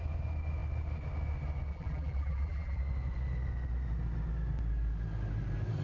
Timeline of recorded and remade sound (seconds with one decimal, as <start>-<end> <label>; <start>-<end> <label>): 0.0-1.7 recorded; 1.7-2.8 remade; 2.8-5.8 recorded